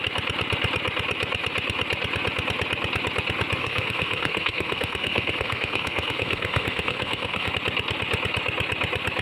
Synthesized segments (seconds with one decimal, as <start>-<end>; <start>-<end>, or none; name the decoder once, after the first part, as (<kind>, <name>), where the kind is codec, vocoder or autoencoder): 3.6-7.5 (codec, SNAC)